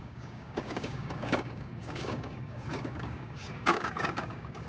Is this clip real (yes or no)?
no